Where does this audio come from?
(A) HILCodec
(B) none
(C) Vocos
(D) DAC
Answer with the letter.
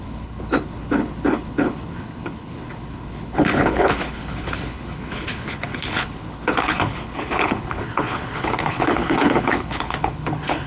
A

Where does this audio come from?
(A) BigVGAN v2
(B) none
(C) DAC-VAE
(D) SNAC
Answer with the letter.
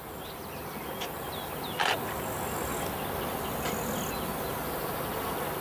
B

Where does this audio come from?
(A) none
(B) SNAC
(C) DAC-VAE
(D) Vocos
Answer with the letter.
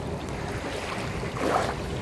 A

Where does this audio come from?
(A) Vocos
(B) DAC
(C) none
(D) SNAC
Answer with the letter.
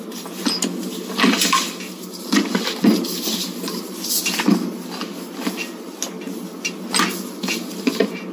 C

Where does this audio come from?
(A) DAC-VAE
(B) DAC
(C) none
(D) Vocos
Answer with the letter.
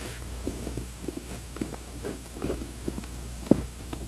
B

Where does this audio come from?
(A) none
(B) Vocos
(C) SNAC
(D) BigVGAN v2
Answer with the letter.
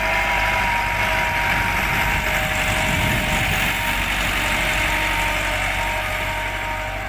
A